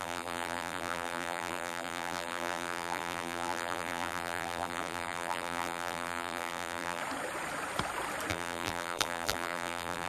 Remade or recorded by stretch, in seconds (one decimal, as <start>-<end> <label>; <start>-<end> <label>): 0.0-7.0 remade; 7.0-8.3 recorded; 8.3-10.1 remade